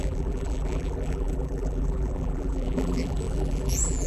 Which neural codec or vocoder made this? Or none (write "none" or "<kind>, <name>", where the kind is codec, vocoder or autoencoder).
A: vocoder, BigVGAN v2